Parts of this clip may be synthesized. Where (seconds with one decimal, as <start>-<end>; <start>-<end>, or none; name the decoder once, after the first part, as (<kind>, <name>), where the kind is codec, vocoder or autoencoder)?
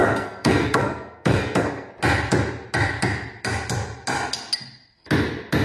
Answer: 0.0-1.9 (codec, SNAC)